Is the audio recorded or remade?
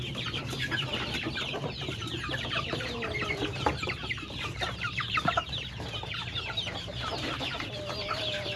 remade